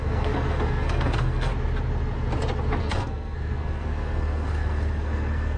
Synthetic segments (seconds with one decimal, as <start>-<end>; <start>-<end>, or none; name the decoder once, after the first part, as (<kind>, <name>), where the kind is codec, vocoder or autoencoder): 0.0-1.5 (codec, SNAC); 2.8-5.6